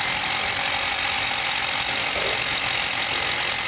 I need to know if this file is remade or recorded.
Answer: recorded